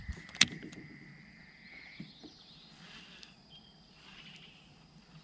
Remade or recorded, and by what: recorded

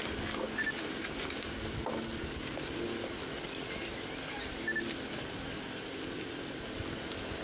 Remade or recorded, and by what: recorded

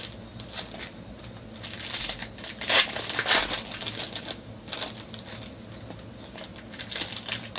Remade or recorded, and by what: recorded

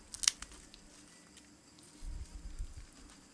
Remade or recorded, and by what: recorded